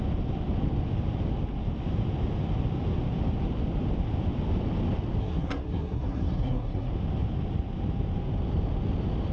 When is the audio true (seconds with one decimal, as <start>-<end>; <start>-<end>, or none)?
0.0-5.2; 6.9-9.3